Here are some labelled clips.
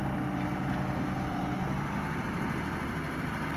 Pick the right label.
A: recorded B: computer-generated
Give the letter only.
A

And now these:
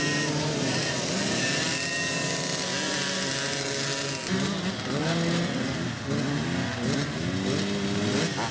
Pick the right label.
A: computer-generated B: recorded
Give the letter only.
B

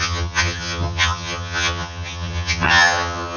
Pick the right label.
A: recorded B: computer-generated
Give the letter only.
B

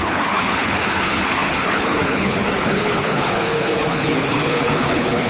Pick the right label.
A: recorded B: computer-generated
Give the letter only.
B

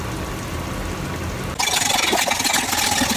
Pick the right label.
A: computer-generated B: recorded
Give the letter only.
B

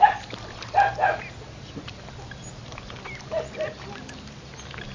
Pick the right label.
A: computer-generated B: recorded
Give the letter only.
B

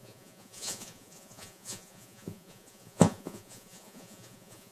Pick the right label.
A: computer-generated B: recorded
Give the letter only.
A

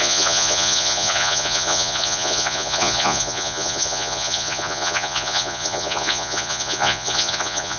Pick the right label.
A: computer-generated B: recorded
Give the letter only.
A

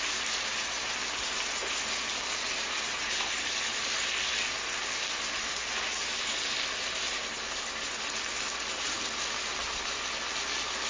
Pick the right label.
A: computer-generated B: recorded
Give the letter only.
B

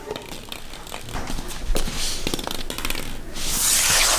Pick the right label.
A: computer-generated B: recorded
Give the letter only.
B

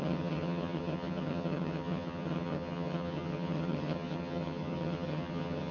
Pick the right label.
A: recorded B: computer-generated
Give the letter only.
B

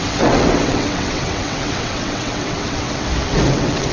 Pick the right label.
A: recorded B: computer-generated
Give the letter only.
B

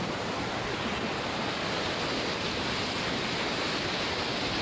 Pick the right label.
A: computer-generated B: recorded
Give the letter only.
B